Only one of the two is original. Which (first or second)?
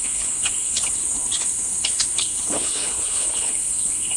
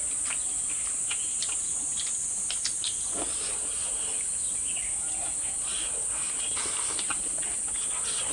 second